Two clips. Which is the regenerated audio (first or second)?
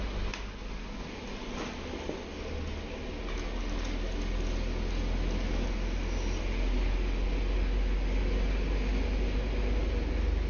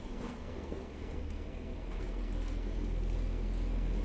second